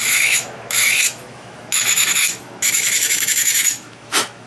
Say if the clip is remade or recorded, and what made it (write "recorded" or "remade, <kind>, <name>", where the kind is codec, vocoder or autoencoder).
remade, autoencoder, DAC-VAE